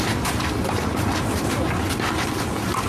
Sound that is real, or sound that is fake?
real